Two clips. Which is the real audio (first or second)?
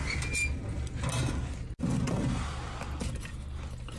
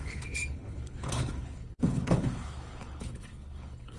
first